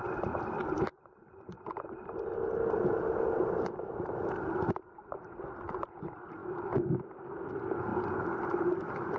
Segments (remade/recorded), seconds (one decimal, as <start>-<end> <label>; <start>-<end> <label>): 0.0-6.4 recorded; 6.4-7.5 remade; 7.5-9.2 recorded